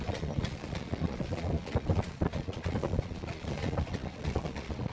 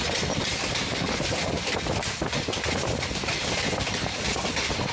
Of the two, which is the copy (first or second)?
first